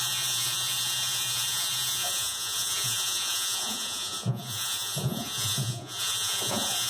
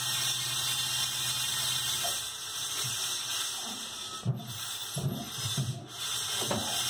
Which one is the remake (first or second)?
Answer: first